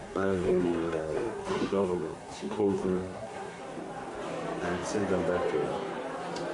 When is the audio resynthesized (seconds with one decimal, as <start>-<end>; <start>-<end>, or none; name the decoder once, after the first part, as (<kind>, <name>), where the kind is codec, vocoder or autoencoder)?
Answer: 0.0-3.6 (codec, SNAC)